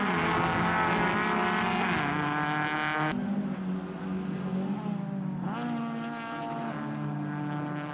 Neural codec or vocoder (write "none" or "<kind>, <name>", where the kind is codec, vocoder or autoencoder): none